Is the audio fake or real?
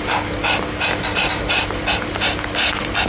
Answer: real